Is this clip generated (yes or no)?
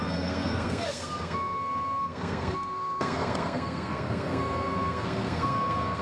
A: yes